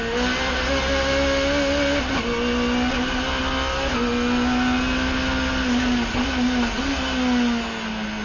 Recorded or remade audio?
recorded